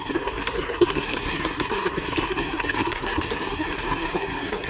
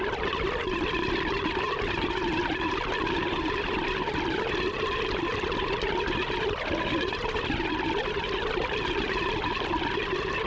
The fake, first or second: first